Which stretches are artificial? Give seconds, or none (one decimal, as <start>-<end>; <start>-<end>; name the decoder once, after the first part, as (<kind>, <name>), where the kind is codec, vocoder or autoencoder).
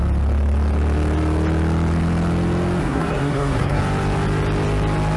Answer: 2.8-3.8 (codec, SNAC)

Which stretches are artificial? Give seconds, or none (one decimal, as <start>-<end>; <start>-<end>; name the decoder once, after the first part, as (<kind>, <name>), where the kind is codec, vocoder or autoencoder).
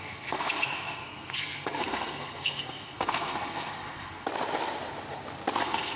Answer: 0.0-4.3 (codec, SNAC); 5.6-6.0